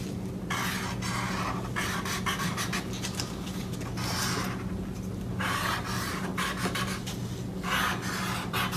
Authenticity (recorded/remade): recorded